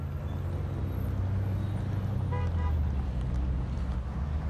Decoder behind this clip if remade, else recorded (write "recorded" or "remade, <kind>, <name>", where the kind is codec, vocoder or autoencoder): recorded